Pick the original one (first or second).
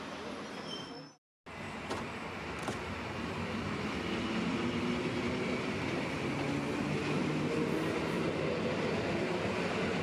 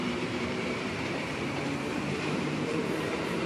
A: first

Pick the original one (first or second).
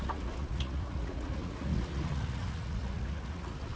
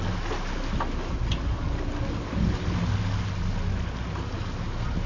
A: second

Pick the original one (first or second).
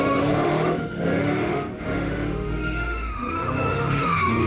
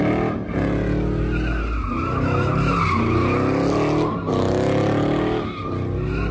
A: second